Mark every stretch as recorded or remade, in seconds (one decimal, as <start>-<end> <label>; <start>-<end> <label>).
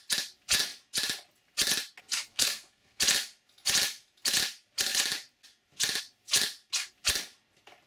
0.0-2.3 recorded; 2.3-3.0 remade; 3.0-7.9 recorded